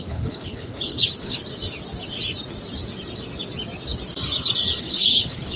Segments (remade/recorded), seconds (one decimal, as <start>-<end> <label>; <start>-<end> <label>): 0.0-1.4 remade; 1.4-4.8 recorded; 4.8-5.6 remade